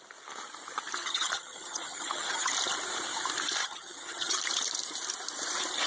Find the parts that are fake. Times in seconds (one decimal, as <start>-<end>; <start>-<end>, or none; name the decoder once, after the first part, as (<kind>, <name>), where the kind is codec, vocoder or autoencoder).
1.0-2.5 (vocoder, HiFi-GAN); 3.6-4.4